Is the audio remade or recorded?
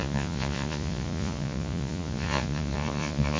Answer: remade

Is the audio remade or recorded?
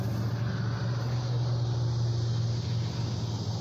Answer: recorded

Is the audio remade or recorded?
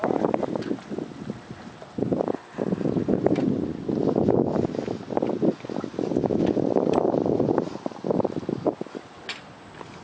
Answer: recorded